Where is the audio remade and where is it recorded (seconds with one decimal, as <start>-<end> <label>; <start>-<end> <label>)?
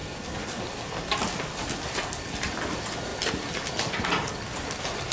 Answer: 0.0-5.1 recorded